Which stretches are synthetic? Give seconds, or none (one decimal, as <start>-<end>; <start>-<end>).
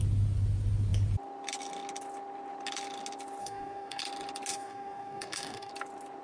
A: 3.4-4.0; 4.5-5.7